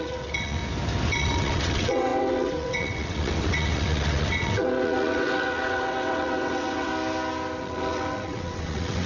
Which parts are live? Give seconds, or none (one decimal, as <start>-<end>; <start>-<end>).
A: 0.6-1.1; 6.9-7.6

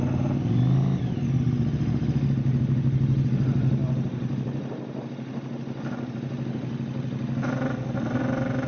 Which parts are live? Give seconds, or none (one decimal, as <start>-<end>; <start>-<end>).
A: 0.0-8.7

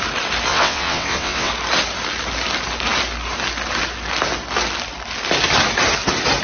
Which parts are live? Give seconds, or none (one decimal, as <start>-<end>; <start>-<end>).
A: 0.0-0.5; 1.5-6.4

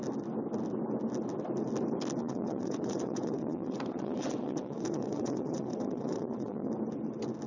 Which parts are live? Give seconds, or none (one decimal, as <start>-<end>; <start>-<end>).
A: 0.0-2.2; 6.7-7.5

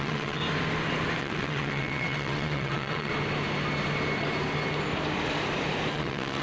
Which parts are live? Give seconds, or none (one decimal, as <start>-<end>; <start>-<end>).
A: 0.4-1.2; 3.1-5.9